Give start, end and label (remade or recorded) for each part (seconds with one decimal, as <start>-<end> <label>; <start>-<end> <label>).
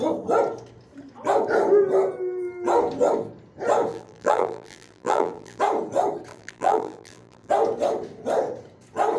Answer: 0.0-3.9 recorded; 3.9-5.6 remade; 5.6-6.3 recorded; 6.3-7.5 remade; 7.5-9.2 recorded